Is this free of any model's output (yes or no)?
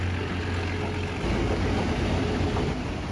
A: yes